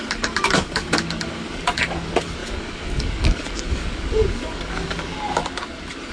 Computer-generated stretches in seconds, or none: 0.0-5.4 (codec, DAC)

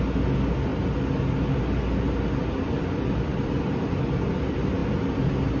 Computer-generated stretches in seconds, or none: 0.7-1.4 (vocoder, BigVGAN v2); 3.3-4.0